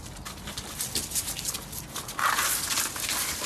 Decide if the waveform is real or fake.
real